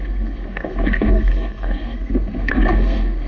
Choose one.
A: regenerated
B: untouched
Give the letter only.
A